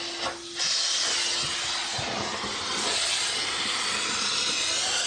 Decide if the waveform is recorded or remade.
recorded